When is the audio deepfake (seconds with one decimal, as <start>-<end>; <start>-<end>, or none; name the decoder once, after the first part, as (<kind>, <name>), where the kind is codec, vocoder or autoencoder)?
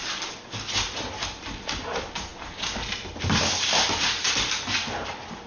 none